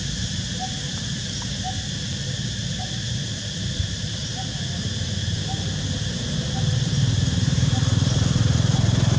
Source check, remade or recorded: remade